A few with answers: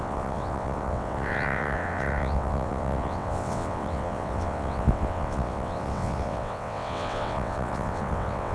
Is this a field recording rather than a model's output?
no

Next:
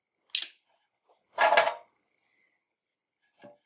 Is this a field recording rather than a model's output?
yes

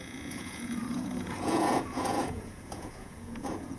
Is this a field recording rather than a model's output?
no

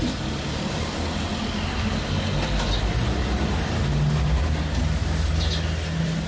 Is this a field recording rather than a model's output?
yes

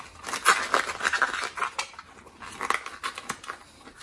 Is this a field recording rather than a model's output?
yes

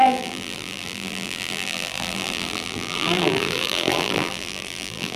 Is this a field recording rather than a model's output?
no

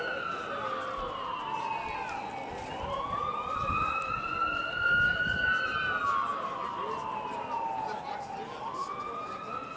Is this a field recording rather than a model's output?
yes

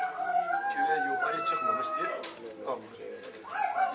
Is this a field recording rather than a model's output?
yes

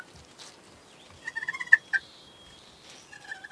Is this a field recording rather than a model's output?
yes